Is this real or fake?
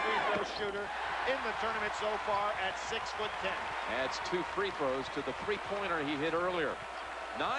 real